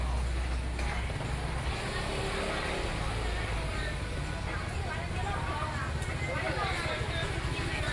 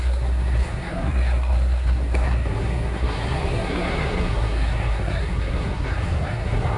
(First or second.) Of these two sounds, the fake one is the second